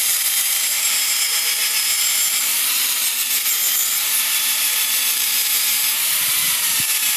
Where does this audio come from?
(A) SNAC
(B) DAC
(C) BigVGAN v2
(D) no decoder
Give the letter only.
C